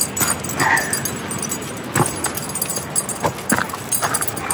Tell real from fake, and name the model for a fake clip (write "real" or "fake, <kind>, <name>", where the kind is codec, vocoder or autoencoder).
real